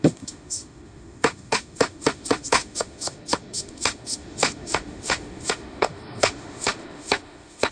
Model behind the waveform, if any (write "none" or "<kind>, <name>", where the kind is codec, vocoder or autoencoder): autoencoder, DAC-VAE